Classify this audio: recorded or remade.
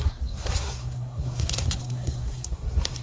remade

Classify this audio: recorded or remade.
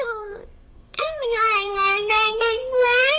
remade